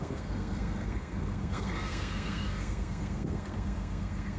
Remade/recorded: remade